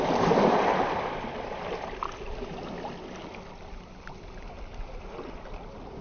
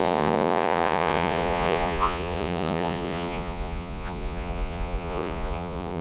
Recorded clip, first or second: first